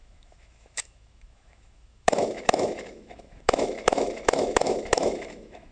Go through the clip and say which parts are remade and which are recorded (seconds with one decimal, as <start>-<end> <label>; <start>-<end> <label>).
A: 0.0-5.7 remade